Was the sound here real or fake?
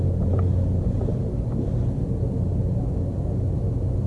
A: real